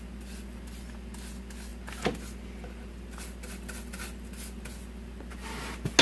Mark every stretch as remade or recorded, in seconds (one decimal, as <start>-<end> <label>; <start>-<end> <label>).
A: 0.0-6.0 recorded